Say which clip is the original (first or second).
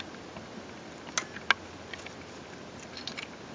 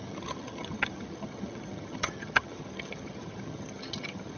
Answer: first